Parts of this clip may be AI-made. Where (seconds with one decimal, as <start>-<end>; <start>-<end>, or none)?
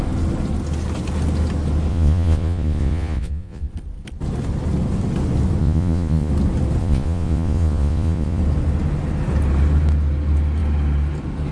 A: 1.9-3.7; 5.6-6.3; 6.8-8.4